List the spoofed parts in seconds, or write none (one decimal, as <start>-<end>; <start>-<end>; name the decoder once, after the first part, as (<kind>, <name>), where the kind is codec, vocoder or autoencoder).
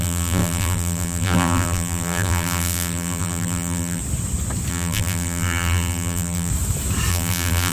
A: 0.0-4.0 (vocoder, BigVGAN v2); 4.7-6.5; 7.1-7.7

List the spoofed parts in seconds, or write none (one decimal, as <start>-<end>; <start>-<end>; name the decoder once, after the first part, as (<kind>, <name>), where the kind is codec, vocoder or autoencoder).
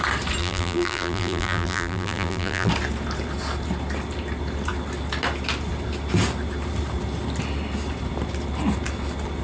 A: 0.4-2.7 (vocoder, BigVGAN v2)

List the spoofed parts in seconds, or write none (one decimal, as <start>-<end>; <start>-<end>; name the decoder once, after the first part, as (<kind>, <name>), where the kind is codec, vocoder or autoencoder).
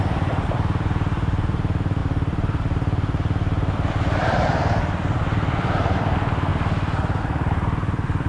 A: 0.0-6.5 (vocoder, BigVGAN v2); 7.2-8.3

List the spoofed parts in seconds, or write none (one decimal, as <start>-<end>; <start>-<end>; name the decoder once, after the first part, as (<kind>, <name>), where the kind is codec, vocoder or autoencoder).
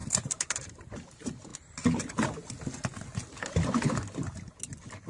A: 0.0-0.9 (vocoder, BigVGAN v2)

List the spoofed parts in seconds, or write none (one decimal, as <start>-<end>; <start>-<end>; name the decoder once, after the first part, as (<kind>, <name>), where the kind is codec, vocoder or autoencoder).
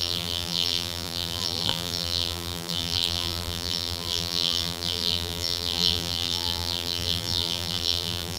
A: 0.0-8.4 (vocoder, BigVGAN v2)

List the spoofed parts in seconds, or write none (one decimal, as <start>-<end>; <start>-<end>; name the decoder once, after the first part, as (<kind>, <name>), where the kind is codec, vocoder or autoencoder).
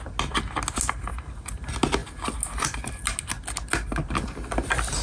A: none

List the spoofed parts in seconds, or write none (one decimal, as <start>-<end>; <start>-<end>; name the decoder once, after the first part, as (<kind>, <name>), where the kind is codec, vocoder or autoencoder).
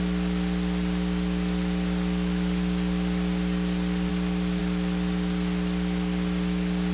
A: none